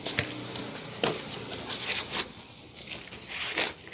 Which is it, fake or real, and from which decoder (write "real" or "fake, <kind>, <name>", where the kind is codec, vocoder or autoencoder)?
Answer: real